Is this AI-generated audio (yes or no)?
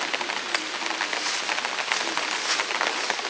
no